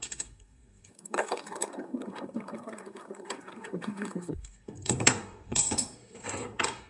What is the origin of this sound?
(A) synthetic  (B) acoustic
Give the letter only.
A